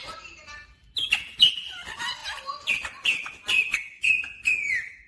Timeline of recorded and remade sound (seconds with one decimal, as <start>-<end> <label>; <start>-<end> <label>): 0.0-5.1 recorded